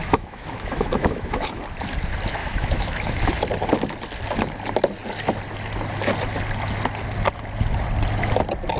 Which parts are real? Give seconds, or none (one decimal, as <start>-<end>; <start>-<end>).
1.6-2.4; 3.4-8.8